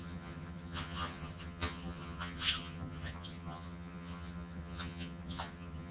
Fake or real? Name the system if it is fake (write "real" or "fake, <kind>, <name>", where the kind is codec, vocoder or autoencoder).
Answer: fake, vocoder, HiFi-GAN